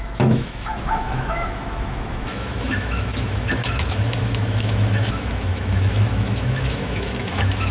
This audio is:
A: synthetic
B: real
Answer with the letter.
A